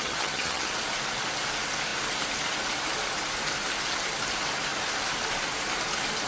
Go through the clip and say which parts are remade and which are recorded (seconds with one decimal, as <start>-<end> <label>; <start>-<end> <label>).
0.0-0.7 remade; 0.7-6.3 recorded